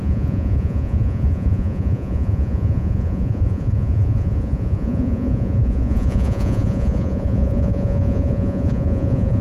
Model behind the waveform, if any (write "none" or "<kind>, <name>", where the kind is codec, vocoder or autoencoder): vocoder, Vocos